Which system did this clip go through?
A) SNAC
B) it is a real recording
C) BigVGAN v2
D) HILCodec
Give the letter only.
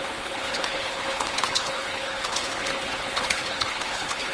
D